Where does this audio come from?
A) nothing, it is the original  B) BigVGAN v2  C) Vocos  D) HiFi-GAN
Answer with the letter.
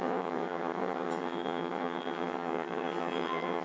D